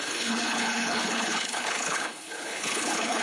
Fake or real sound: fake